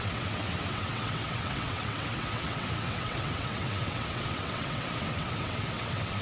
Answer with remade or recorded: remade